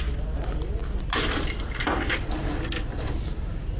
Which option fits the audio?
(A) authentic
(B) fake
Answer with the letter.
A